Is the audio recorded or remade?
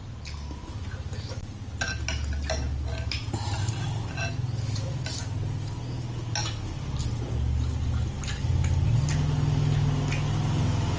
recorded